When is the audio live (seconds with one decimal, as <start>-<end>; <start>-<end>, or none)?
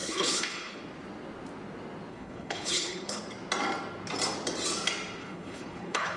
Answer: 0.8-2.1; 3.2-5.2